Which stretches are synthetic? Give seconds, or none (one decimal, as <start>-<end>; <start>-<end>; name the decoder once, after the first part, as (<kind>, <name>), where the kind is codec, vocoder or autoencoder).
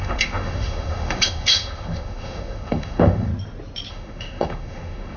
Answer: 0.0-3.3 (autoencoder, DAC-VAE); 3.9-5.2